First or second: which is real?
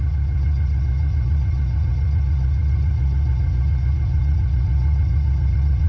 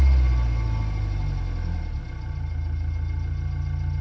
second